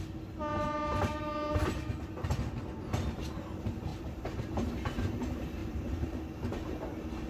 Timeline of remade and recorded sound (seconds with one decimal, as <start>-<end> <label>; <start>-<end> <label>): 0.0-3.9 recorded; 3.9-4.5 remade; 4.5-5.6 recorded; 5.6-7.3 remade

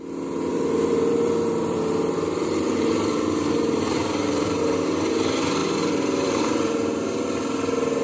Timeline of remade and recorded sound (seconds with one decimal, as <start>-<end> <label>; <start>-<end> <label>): 0.0-0.5 recorded; 0.5-4.6 remade; 4.6-5.6 recorded; 5.6-7.4 remade; 7.4-8.0 recorded

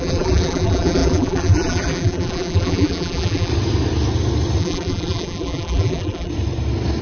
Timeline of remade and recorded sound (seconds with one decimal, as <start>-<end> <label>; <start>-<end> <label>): 0.0-3.5 remade; 3.5-4.6 recorded; 4.6-6.3 remade; 6.3-7.0 recorded

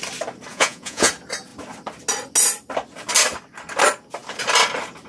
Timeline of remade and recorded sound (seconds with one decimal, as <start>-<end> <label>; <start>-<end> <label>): 0.0-0.5 recorded; 0.5-1.1 remade; 1.1-5.1 recorded

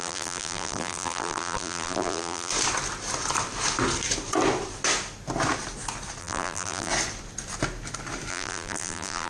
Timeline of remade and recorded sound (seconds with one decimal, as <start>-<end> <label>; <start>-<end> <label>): 0.0-2.5 remade; 2.5-6.2 recorded; 6.2-6.9 remade; 6.9-8.3 recorded; 8.3-9.3 remade